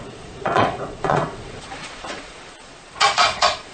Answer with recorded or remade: remade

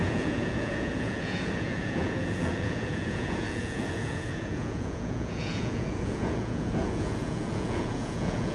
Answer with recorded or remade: remade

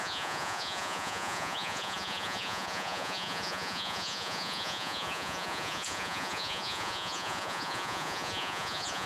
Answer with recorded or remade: remade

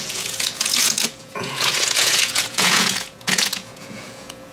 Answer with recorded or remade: remade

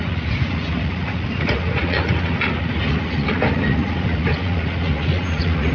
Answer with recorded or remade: remade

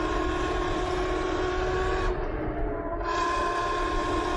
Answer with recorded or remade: recorded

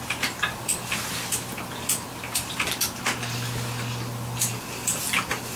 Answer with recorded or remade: recorded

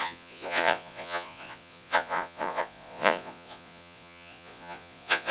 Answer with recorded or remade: remade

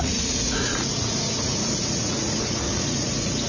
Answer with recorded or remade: remade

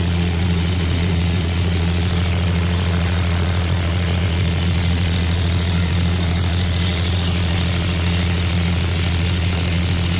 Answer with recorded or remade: remade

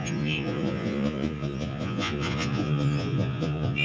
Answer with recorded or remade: remade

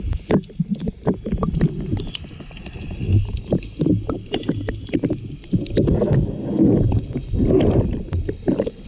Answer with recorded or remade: recorded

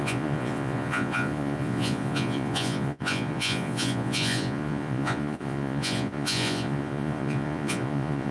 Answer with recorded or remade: remade